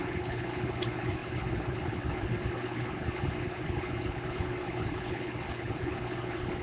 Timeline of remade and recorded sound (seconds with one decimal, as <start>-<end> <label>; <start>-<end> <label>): 0.0-6.6 remade